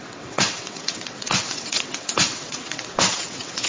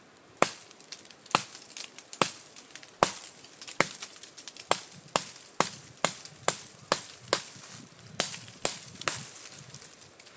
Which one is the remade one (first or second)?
first